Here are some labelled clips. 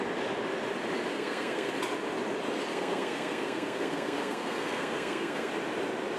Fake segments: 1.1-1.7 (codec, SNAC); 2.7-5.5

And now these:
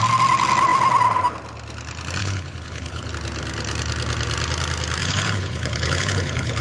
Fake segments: 2.2-3.1 (codec, HILCodec); 5.0-6.6